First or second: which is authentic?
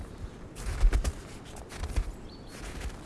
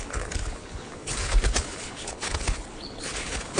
first